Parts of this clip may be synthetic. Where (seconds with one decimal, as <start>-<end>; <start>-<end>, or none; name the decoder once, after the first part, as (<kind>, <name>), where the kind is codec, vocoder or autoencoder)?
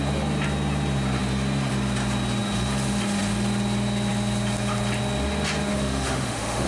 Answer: 5.7-6.7 (autoencoder, DAC-VAE)